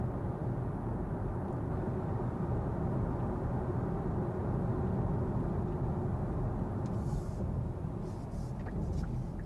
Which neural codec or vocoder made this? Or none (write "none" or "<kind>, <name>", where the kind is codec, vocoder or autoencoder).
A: none